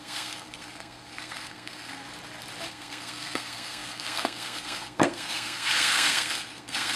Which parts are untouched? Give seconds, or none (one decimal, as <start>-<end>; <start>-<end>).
2.0-2.7

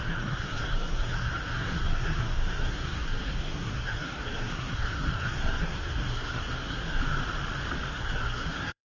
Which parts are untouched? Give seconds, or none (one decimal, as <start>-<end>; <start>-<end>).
7.0-7.9

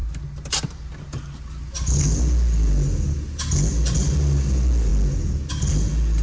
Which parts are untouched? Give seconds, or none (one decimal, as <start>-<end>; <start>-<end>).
0.0-6.2

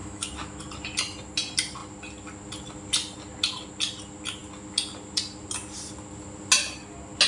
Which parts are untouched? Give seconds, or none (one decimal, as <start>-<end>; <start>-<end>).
0.6-7.3